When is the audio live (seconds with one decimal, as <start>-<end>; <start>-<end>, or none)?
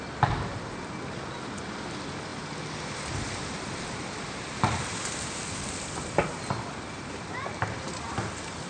0.0-8.7